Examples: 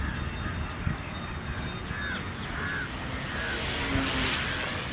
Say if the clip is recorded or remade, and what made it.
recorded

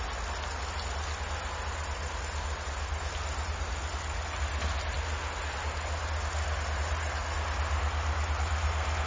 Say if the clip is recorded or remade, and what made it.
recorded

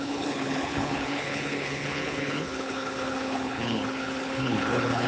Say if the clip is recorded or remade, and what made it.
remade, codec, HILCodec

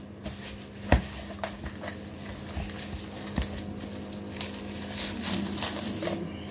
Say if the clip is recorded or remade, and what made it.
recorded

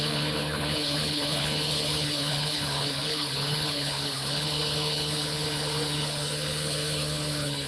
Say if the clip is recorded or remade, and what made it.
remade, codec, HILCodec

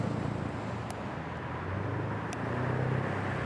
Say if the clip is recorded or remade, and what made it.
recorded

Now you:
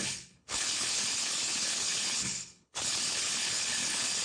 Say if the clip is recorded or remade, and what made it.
remade, codec, HILCodec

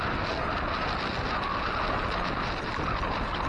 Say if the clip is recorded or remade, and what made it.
recorded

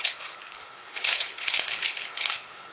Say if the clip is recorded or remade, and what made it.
remade, codec, HILCodec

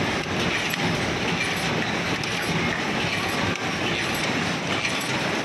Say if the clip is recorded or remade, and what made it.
recorded